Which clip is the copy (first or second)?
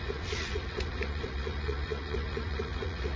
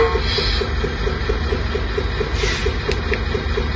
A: first